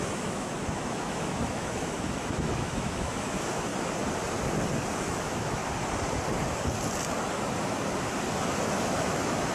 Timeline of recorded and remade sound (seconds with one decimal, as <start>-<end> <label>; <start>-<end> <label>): 0.0-3.7 remade; 3.7-5.0 recorded; 5.0-5.6 remade; 5.6-9.0 recorded; 9.0-9.5 remade